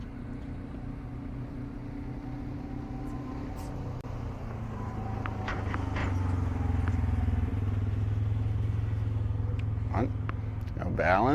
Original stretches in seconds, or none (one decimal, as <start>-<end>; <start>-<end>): 0.0-11.3